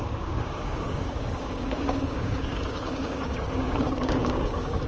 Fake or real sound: fake